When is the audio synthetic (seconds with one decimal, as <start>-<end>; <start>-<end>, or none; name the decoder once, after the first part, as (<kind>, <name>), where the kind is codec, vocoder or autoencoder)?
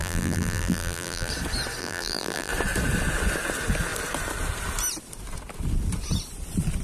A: 0.0-1.3 (vocoder, BigVGAN v2); 1.8-2.5